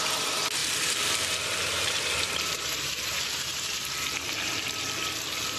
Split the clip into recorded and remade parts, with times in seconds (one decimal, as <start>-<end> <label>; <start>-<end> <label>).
0.0-0.6 recorded; 0.6-3.8 remade; 3.8-5.6 recorded